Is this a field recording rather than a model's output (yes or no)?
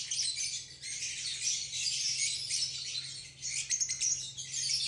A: yes